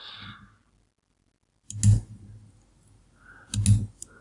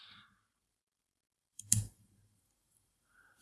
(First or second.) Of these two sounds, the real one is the first